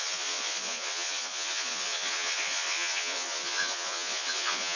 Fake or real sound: fake